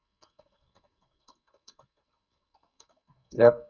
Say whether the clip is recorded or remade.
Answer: remade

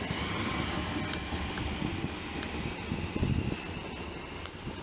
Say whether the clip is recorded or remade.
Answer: recorded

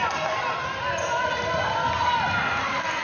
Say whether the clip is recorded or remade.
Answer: recorded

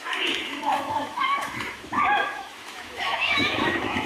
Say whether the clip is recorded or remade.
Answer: remade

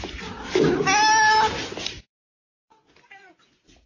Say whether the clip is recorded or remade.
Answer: recorded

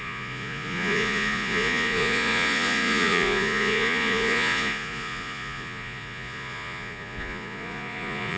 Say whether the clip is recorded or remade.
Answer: remade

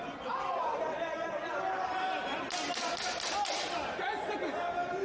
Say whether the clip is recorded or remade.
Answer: recorded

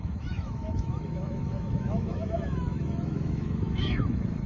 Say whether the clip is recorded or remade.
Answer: remade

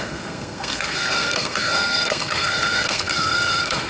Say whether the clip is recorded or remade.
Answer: remade